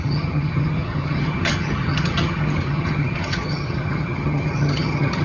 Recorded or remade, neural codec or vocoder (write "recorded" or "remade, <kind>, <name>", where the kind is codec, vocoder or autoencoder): remade, vocoder, HiFi-GAN